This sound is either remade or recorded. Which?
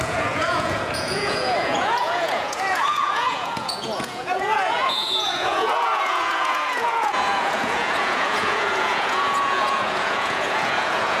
remade